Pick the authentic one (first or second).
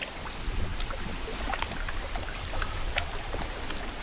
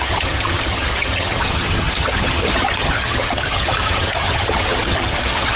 first